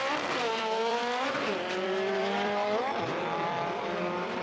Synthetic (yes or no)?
yes